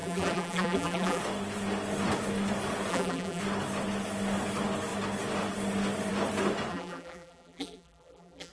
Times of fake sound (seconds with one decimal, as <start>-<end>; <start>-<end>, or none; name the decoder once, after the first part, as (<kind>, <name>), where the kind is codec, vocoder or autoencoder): 0.0-1.2 (vocoder, BigVGAN v2); 2.9-3.4; 6.7-8.5